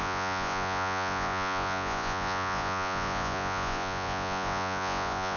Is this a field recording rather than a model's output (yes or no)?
no